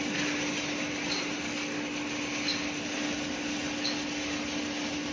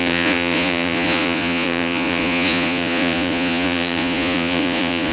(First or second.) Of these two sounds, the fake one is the second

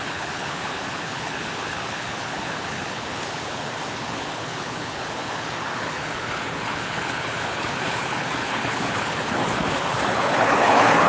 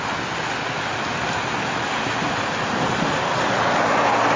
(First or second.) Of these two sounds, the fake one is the first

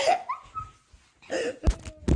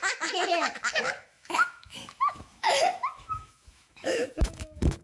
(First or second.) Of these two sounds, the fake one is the second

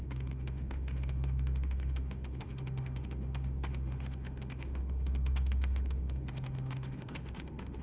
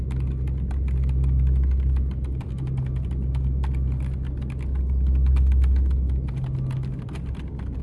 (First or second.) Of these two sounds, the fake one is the first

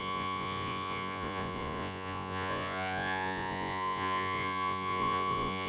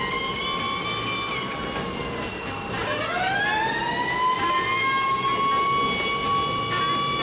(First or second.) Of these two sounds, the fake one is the first